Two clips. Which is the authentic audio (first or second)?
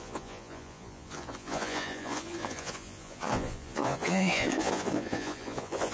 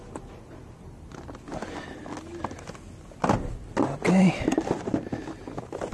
second